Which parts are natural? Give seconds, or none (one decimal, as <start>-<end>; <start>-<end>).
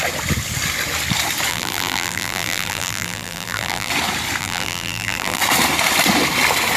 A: 0.0-1.5; 3.9-4.4; 5.4-6.8